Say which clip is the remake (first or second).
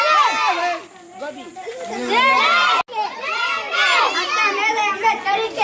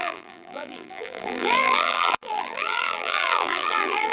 second